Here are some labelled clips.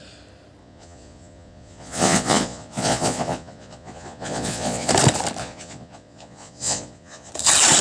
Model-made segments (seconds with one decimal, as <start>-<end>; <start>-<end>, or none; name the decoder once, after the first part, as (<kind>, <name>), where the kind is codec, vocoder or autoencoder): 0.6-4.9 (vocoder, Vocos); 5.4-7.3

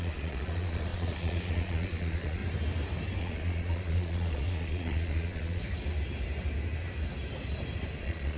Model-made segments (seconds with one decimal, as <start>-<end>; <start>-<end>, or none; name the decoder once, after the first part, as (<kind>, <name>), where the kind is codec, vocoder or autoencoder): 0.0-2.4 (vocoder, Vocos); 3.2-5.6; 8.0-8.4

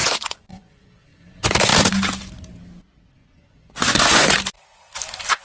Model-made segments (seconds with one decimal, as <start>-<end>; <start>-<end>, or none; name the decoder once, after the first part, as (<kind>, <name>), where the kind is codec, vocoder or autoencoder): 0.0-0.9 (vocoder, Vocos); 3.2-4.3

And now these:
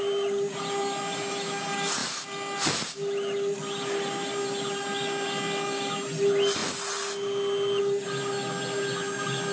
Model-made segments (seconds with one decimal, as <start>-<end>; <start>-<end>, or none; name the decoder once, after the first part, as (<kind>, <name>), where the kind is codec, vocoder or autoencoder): none

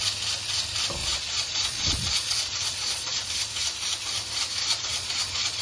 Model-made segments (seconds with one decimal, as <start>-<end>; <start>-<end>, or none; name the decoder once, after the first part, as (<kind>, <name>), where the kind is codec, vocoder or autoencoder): 1.0-3.3 (vocoder, Vocos); 4.6-5.6

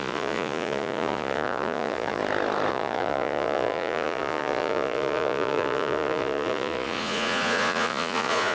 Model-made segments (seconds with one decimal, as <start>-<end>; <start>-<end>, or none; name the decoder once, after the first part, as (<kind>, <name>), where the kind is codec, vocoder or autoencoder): 0.0-2.2 (vocoder, Vocos); 2.7-8.5